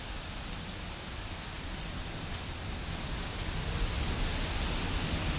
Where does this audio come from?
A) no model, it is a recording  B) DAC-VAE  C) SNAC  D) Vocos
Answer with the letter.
A